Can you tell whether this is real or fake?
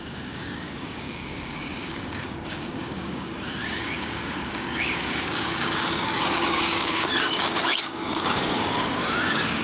fake